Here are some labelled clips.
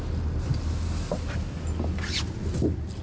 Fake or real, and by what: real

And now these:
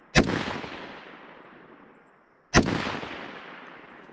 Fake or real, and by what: real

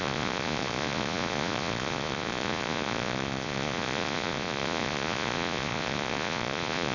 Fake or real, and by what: fake, vocoder, Vocos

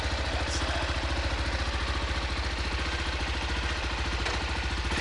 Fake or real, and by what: real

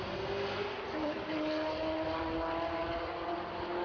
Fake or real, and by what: real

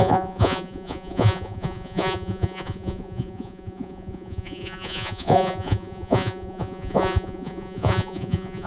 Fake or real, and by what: fake, vocoder, Vocos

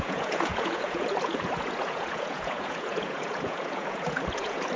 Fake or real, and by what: fake, vocoder, Vocos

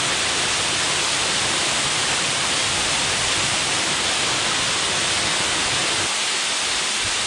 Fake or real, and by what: real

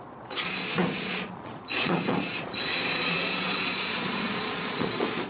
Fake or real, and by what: fake, vocoder, Vocos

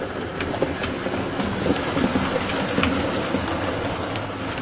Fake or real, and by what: real